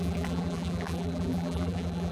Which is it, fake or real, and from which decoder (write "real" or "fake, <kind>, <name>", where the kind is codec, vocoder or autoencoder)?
fake, vocoder, BigVGAN v2